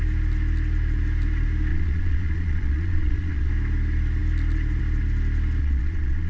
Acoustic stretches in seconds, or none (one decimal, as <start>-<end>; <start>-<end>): 0.0-1.7; 3.5-5.6